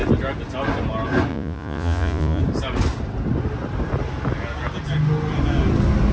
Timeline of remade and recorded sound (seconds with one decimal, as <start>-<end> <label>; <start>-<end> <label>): 0.0-1.3 recorded; 1.3-2.4 remade; 2.4-6.1 recorded